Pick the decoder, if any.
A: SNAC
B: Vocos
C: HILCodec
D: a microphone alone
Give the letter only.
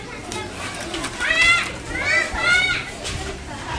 D